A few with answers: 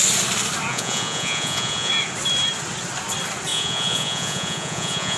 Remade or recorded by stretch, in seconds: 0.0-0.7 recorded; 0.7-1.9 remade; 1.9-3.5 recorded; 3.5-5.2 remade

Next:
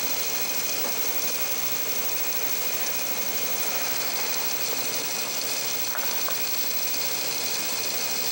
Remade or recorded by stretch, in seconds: 0.0-8.3 recorded

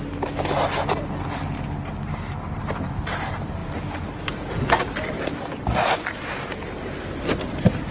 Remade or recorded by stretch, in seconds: 0.0-3.6 recorded; 3.6-6.3 remade; 6.3-7.9 recorded

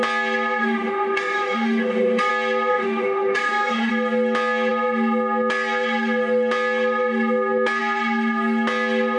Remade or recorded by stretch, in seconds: 0.0-0.6 recorded; 0.6-2.3 remade; 2.3-2.7 recorded; 2.7-3.9 remade; 3.9-9.2 recorded